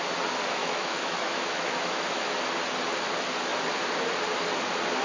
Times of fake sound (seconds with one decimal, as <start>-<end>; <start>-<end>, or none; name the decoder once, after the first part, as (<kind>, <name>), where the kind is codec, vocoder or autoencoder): 0.6-2.4 (autoencoder, DAC-VAE)